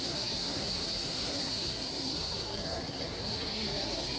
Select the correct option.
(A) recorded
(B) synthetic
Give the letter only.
B